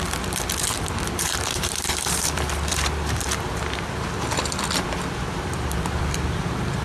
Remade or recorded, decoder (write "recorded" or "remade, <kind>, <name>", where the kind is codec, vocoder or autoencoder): remade, vocoder, BigVGAN v2